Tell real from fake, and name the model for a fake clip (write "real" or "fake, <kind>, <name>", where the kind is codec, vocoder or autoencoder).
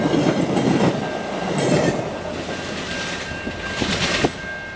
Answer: real